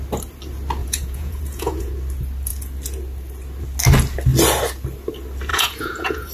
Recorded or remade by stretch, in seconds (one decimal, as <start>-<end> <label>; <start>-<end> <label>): 0.0-0.8 recorded; 0.8-1.9 remade; 1.9-5.5 recorded; 5.5-6.3 remade